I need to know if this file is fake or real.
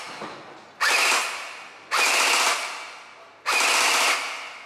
real